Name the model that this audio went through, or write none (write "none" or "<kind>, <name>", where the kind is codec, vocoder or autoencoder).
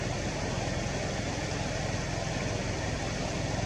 none